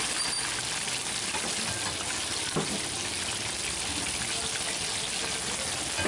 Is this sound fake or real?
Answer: real